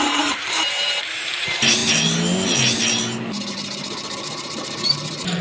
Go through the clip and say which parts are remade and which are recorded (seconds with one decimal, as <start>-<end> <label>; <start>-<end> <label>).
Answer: 0.0-1.8 remade; 1.8-3.5 recorded; 3.5-5.4 remade